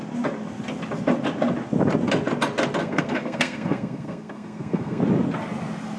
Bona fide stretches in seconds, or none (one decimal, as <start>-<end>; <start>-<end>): 0.0-2.8; 5.0-6.0